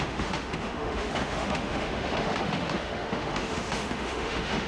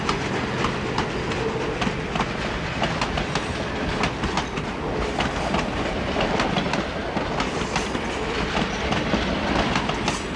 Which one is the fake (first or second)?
first